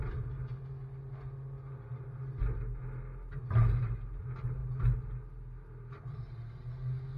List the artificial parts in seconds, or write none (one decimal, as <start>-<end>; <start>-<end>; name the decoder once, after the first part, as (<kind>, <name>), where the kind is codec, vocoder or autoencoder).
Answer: none